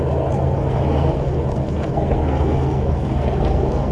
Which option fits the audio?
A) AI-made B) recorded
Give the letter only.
A